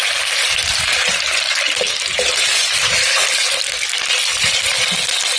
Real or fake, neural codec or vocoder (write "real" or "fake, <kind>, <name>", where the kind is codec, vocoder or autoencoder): real